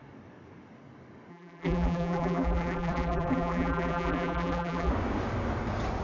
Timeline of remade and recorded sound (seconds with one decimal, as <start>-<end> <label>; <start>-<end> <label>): 0.0-1.3 recorded; 1.3-4.9 remade; 4.9-6.0 recorded